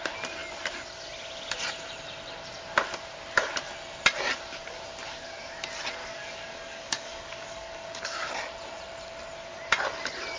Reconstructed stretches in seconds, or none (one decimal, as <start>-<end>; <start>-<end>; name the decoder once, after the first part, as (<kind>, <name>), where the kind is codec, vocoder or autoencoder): 6.0-8.3 (codec, DAC)

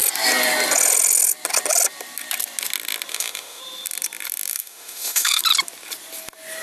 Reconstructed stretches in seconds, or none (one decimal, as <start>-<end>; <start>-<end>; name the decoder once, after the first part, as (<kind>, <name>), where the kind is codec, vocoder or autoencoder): 3.1-3.6 (autoencoder, DAC-VAE); 4.5-5.4

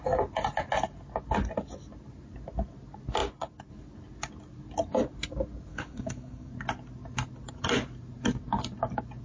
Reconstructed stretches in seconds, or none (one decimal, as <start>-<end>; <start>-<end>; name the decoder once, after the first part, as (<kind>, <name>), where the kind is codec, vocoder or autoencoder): 5.7-6.5 (codec, DAC)

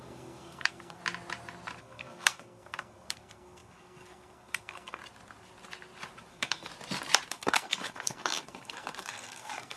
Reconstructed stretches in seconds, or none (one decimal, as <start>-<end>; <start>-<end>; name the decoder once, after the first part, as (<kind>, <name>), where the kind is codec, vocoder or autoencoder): 0.0-1.0 (codec, SNAC); 1.8-5.0; 6.3-6.7; 7.3-9.8

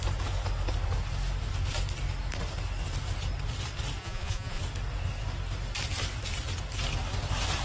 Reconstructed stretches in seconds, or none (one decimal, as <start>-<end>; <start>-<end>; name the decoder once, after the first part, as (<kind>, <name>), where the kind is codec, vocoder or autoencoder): 4.0-4.6 (vocoder, Vocos)